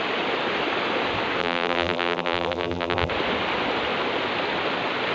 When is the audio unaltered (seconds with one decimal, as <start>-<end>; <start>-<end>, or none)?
0.0-1.4; 3.1-5.1